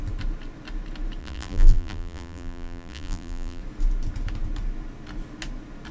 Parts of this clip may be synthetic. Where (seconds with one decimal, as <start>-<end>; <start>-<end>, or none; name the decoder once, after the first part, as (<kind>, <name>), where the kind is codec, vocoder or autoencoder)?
1.2-3.6 (vocoder, BigVGAN v2)